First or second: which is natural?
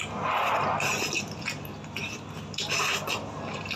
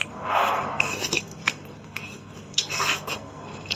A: first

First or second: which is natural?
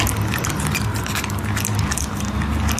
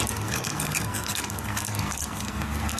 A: first